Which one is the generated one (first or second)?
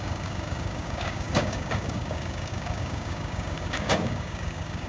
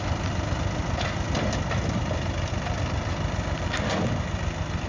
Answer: first